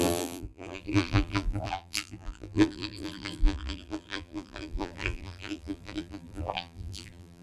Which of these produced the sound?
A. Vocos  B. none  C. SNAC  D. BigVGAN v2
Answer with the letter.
D